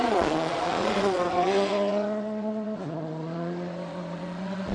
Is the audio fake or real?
fake